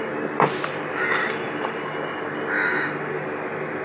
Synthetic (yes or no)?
no